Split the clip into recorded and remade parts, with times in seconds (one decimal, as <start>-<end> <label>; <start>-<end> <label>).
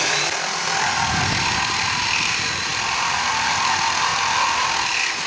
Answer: 0.0-4.1 remade; 4.1-5.3 recorded